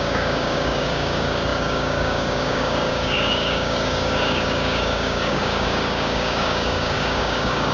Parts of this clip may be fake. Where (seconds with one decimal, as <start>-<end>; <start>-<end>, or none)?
0.0-7.7